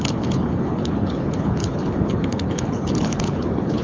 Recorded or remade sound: remade